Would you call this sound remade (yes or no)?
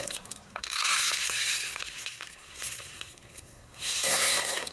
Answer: yes